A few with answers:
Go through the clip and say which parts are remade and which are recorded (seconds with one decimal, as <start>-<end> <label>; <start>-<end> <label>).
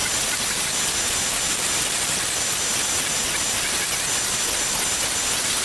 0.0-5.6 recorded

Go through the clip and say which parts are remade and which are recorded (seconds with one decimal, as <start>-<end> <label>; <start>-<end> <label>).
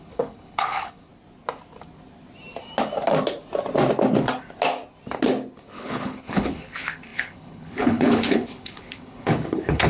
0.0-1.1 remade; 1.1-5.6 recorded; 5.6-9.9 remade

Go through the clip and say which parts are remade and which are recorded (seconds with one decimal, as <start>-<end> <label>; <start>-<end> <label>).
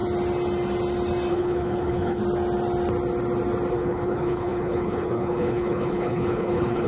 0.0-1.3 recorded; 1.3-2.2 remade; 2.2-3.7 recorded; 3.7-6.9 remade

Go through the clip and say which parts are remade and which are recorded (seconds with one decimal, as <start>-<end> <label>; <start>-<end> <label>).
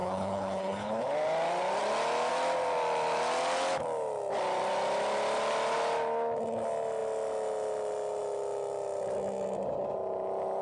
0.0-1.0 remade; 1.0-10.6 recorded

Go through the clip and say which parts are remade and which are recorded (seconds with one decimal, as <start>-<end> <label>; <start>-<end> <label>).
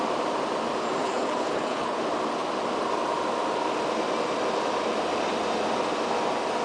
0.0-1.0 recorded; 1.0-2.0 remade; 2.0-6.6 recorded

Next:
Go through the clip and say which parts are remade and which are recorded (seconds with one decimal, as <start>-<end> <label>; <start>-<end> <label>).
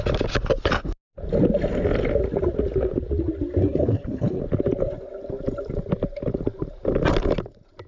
0.0-3.6 recorded; 3.6-4.4 remade; 4.4-7.9 recorded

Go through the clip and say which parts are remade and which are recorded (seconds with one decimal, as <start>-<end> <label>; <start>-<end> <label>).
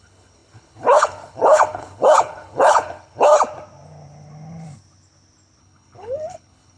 0.0-3.3 remade; 3.3-5.6 recorded; 5.6-6.8 remade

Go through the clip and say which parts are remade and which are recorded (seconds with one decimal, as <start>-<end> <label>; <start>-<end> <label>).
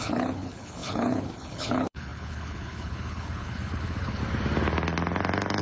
0.0-4.2 remade; 4.2-5.6 recorded